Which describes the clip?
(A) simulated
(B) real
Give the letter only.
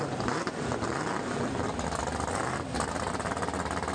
B